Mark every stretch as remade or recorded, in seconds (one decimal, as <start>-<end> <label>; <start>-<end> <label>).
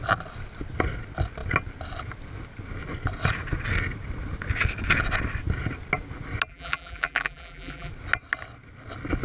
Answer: 0.0-6.5 recorded; 6.5-7.9 remade; 7.9-9.2 recorded